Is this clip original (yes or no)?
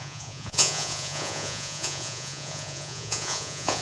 no